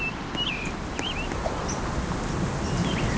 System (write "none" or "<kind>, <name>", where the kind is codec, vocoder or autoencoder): none